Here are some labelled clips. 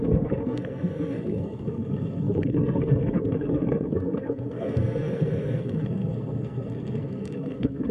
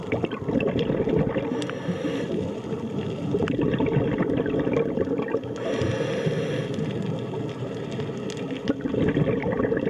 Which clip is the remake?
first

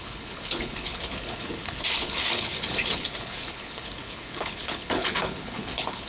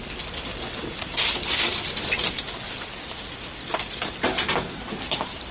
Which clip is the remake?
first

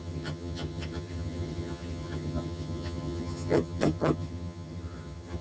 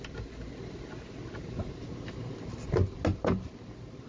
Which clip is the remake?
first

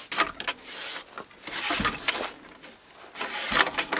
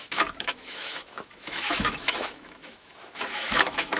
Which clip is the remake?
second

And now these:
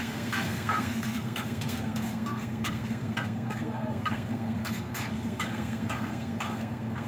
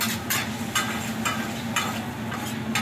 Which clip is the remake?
first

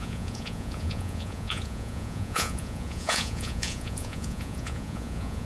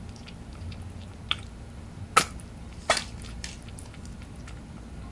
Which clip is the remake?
first